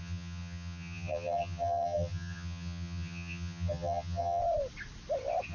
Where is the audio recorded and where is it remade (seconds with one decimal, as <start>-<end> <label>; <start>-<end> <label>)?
0.0-4.4 remade; 4.4-5.5 recorded